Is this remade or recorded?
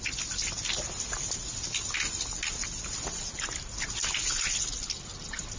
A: recorded